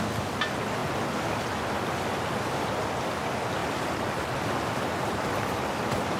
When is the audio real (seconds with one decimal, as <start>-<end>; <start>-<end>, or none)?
0.0-6.2